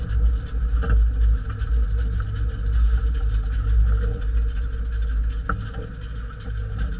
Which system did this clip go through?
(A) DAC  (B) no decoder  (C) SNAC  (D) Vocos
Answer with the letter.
B